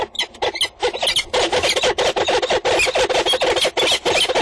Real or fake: real